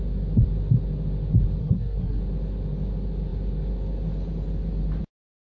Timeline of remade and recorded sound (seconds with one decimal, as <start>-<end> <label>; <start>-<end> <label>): 0.0-1.6 recorded; 1.6-2.2 remade; 2.2-5.5 recorded